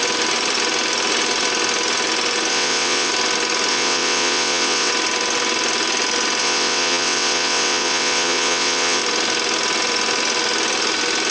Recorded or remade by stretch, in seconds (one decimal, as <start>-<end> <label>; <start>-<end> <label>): 0.0-2.5 recorded; 2.5-3.1 remade; 3.1-3.7 recorded; 3.7-4.9 remade; 4.9-6.4 recorded; 6.4-9.0 remade; 9.0-11.3 recorded